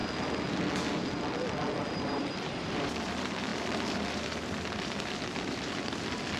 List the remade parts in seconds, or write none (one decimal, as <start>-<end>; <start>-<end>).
1.9-6.4